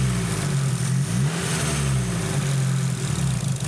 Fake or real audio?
real